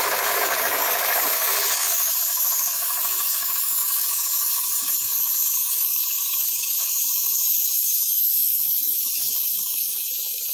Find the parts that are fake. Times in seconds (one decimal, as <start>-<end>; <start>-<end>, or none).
0.0-10.5